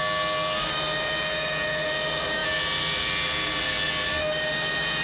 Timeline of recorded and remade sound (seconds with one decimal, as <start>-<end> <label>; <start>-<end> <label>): 0.0-5.0 recorded